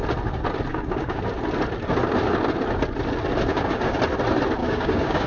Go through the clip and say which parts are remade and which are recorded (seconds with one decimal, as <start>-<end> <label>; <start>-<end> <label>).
0.0-0.7 recorded; 0.7-1.2 remade; 1.2-3.5 recorded; 3.5-4.0 remade; 4.0-4.6 recorded; 4.6-5.3 remade